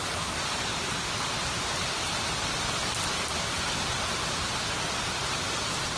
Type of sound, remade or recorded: recorded